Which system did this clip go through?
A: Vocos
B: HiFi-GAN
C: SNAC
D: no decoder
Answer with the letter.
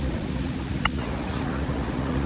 A